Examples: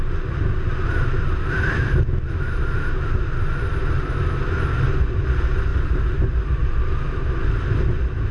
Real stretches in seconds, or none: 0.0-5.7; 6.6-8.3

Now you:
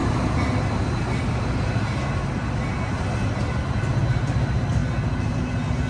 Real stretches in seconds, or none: 0.0-5.9

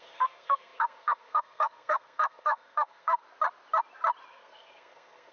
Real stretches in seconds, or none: 3.2-4.3

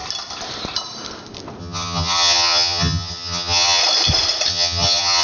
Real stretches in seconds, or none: 0.0-1.6; 3.8-4.5

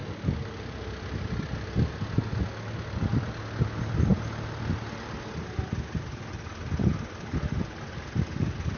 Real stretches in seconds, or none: 0.0-8.8

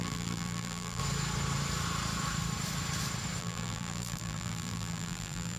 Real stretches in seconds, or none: 1.0-3.4

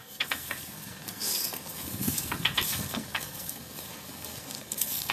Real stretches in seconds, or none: none

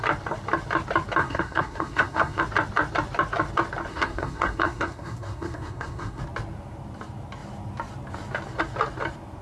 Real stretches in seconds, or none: 0.0-1.2; 2.4-3.9; 6.2-9.4